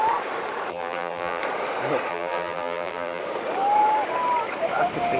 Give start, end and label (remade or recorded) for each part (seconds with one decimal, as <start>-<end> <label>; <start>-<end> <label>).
0.0-0.7 recorded; 0.7-1.4 remade; 1.4-2.1 recorded; 2.1-3.2 remade; 3.2-5.2 recorded